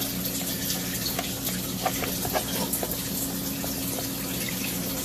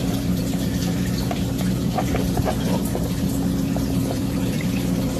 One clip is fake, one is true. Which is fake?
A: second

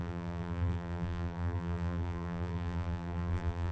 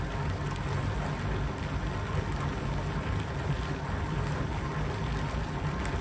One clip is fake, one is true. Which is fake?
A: first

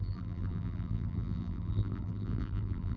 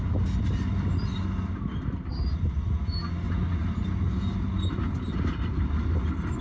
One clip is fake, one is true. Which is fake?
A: first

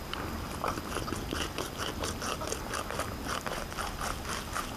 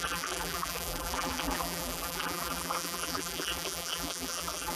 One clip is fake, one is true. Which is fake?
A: second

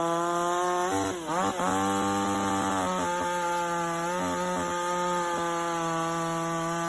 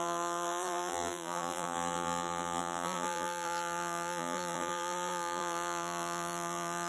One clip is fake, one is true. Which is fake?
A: second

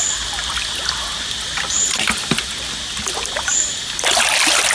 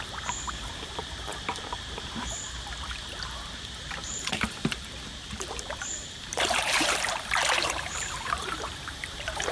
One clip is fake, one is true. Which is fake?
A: second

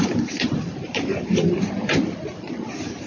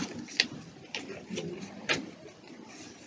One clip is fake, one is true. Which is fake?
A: first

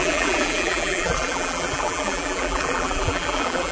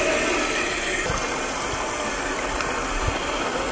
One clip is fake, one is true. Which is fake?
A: first